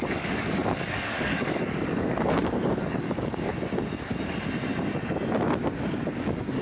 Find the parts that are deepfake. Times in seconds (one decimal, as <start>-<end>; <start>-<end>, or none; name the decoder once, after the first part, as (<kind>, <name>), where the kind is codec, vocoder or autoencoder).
0.0-3.5 (codec, DAC); 5.9-6.6